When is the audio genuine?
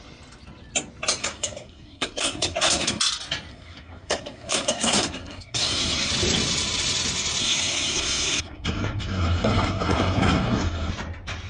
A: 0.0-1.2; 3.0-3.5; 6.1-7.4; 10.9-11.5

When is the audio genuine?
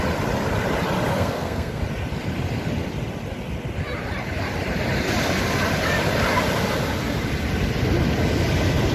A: 0.0-1.1; 1.8-8.9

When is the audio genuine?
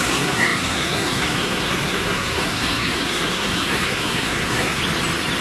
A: 4.8-5.4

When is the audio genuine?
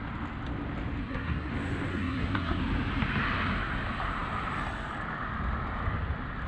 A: 0.0-1.0; 1.5-1.9; 2.6-6.5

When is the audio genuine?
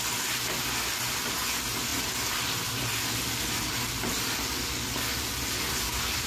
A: 0.0-6.3